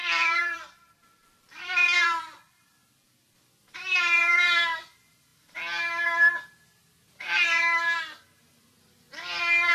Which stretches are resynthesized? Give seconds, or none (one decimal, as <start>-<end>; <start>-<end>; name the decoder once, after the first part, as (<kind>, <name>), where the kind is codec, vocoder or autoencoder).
0.0-3.1 (vocoder, BigVGAN v2)

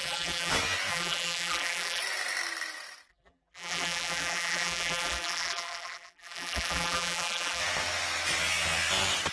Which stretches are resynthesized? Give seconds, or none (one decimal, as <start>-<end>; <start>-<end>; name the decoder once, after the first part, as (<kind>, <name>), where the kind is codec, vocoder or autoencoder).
0.0-0.5 (vocoder, BigVGAN v2); 0.9-2.0; 3.1-7.6

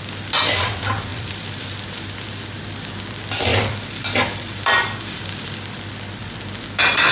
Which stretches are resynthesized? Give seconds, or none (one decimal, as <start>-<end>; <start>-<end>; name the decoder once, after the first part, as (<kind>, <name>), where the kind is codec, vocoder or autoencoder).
1.1-1.6 (vocoder, BigVGAN v2); 3.5-5.6